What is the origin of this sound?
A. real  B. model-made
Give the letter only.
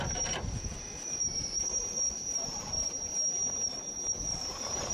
B